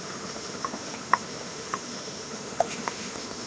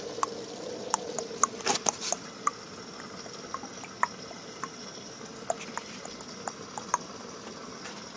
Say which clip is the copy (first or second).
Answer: first